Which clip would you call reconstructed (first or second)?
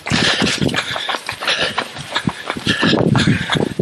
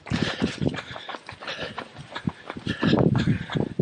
first